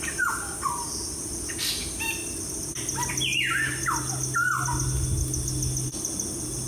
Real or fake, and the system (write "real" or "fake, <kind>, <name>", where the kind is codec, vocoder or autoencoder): real